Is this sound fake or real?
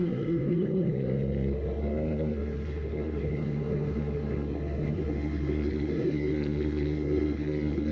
fake